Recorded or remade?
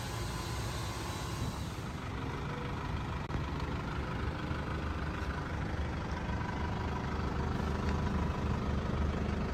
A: recorded